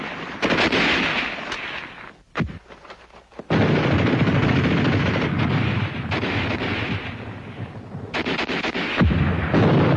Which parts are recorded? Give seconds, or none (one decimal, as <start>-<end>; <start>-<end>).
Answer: 0.0-10.0